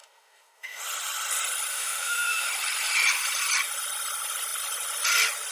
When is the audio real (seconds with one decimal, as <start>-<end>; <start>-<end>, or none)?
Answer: 0.8-1.7; 2.5-5.5